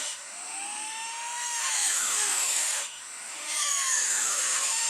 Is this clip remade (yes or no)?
yes